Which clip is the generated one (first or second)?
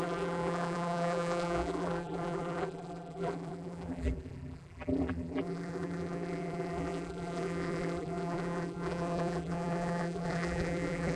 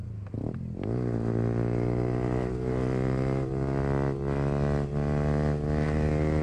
first